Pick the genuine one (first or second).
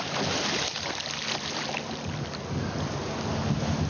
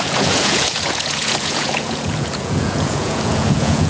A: first